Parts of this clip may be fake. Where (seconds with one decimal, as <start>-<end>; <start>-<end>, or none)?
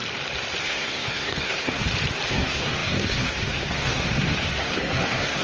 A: 0.6-1.8; 2.3-5.4